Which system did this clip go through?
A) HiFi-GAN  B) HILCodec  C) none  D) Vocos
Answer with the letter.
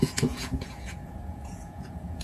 D